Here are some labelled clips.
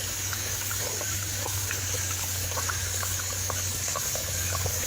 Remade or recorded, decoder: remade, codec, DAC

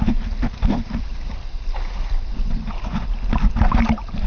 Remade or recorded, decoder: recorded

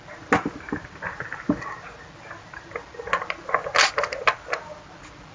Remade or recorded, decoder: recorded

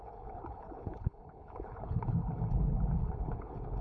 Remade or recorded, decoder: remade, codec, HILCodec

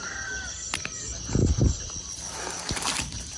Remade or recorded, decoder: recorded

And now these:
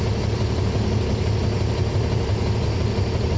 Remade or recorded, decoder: recorded